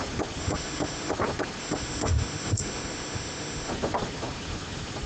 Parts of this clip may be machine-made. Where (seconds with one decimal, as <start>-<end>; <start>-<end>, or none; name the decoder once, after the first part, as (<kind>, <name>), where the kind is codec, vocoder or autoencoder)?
0.4-1.1 (autoencoder, DAC-VAE); 1.6-3.7